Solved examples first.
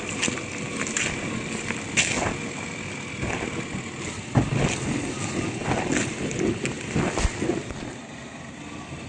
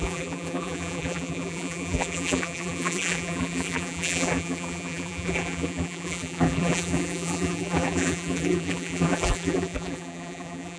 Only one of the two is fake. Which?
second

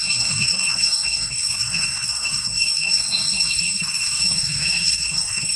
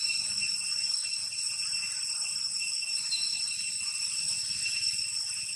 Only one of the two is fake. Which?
first